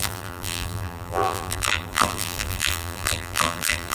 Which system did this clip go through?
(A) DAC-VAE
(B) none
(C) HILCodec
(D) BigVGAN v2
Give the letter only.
D